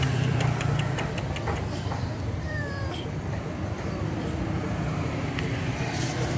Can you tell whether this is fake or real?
fake